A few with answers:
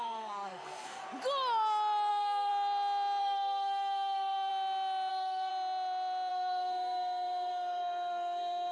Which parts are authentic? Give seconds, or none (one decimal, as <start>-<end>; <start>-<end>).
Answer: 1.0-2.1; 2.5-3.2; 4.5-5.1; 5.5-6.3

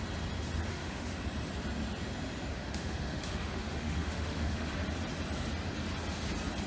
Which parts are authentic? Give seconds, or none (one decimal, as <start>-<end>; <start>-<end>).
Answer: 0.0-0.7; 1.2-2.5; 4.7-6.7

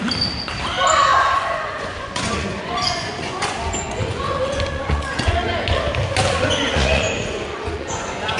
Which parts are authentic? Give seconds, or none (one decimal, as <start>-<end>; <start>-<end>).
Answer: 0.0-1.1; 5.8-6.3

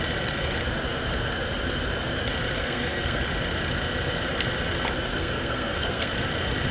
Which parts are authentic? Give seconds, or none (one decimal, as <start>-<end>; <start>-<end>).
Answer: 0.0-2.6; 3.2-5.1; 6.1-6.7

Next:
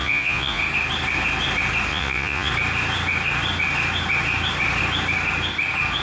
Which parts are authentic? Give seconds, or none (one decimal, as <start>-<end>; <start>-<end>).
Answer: 0.6-1.9; 2.5-6.0

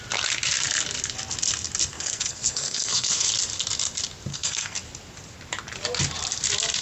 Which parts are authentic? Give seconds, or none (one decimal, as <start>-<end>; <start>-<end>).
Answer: 0.0-1.9; 3.3-4.3; 4.8-6.8

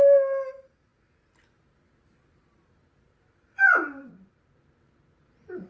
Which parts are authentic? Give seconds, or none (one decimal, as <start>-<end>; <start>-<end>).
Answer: 0.0-5.7